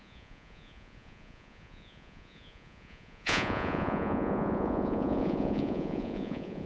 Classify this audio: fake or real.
fake